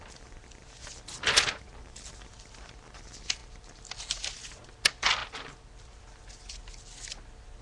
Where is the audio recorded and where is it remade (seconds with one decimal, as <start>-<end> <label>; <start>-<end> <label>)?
0.0-7.6 recorded